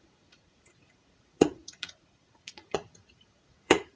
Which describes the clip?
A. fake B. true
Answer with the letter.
A